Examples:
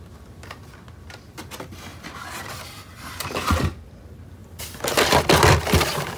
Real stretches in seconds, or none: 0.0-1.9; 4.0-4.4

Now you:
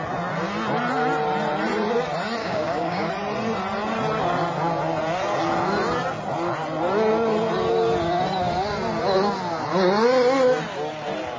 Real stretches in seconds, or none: 0.0-2.4; 3.1-11.4

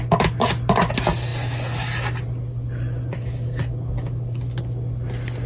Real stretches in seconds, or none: 0.0-5.5

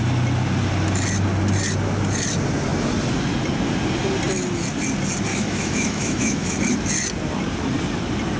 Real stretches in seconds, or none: 0.0-5.3; 6.6-8.4

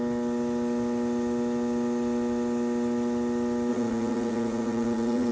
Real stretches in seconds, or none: 0.0-3.7

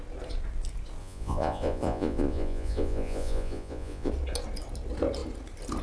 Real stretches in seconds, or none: 0.0-1.0; 4.1-5.8

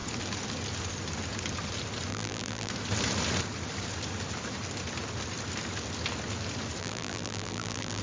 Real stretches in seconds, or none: 0.0-2.1; 2.7-6.8